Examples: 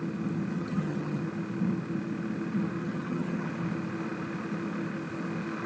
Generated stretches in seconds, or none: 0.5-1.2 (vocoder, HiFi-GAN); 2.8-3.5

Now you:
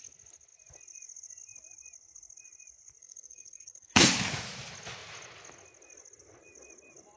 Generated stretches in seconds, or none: 3.0-4.1 (codec, SNAC)

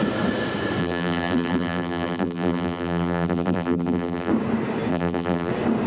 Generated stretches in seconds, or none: 0.8-4.3 (vocoder, BigVGAN v2); 4.9-5.5

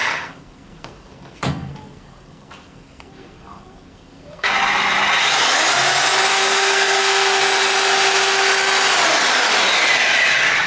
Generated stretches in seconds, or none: 0.0-4.5 (codec, SNAC); 6.3-7.4